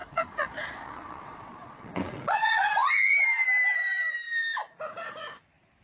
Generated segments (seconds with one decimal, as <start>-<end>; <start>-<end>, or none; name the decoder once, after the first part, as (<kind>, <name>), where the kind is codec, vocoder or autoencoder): 0.0-2.7 (vocoder, Vocos)